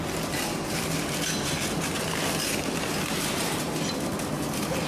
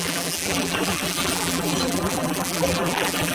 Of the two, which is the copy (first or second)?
second